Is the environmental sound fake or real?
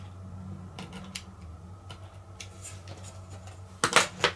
real